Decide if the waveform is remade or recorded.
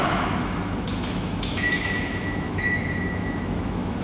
remade